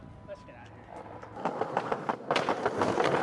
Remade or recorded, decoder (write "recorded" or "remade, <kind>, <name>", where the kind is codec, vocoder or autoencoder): recorded